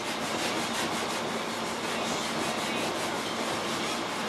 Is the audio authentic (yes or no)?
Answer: yes